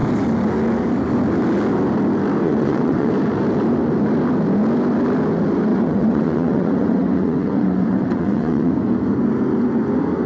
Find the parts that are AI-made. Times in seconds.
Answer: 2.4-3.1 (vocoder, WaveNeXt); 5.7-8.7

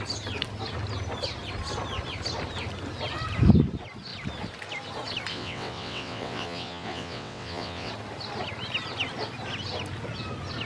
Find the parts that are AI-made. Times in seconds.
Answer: 5.3-7.9 (vocoder, WaveNeXt)